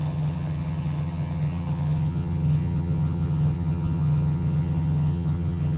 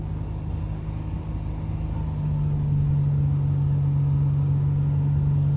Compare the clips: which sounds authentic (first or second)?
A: second